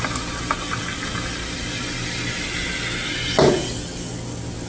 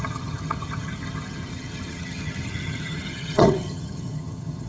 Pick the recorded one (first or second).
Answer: first